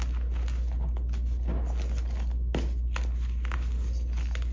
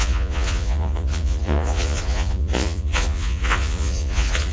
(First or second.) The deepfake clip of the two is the second